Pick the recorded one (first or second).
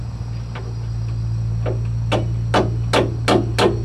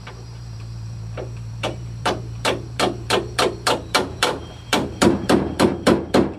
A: first